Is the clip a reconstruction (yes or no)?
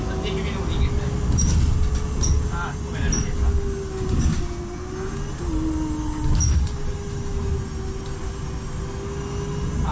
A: no